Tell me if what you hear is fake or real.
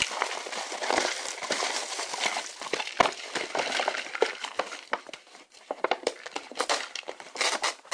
fake